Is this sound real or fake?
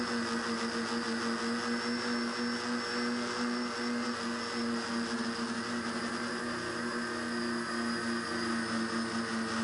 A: real